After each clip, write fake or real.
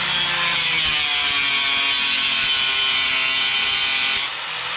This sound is real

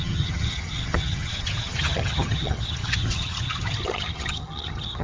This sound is fake